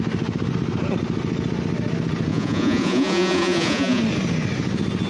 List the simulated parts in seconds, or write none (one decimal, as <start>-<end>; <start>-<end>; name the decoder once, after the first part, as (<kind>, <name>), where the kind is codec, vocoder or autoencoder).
2.3-4.0 (vocoder, Vocos)